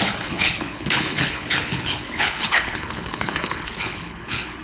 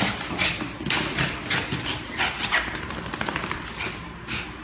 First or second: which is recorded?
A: second